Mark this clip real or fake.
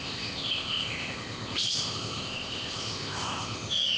fake